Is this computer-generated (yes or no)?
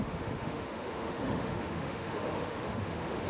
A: yes